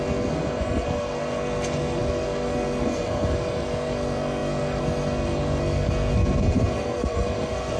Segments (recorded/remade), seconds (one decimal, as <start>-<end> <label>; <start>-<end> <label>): 0.0-7.8 remade